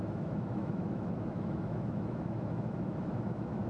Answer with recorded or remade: remade